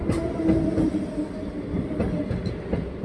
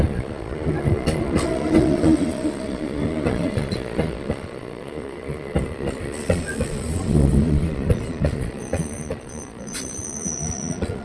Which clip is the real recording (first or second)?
first